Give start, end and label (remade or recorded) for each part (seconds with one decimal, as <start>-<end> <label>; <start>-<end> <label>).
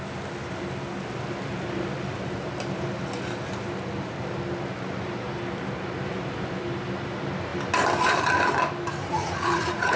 0.0-9.1 recorded; 9.1-10.0 remade